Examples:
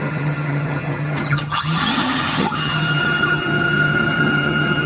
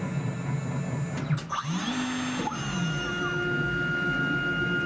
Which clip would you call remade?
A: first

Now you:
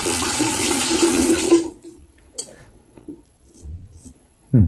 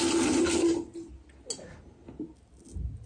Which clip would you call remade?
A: first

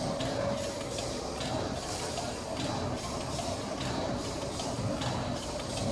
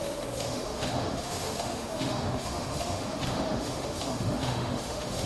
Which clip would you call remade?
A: second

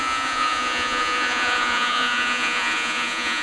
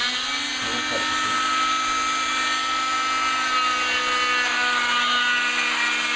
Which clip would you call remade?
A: first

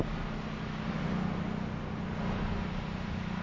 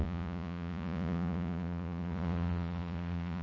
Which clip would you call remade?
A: second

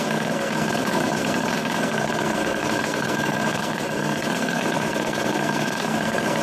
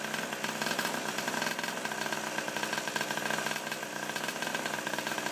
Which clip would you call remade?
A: first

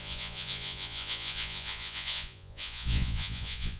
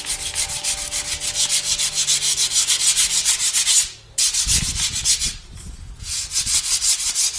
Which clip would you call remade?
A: first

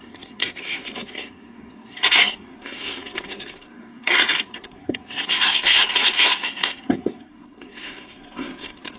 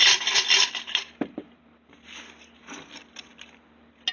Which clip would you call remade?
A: first